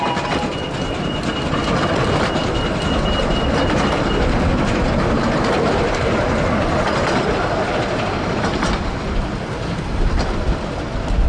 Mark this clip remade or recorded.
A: recorded